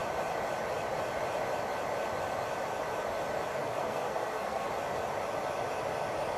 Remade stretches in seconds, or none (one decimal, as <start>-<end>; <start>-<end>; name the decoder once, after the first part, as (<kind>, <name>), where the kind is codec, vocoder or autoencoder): 3.5-4.7 (codec, SNAC)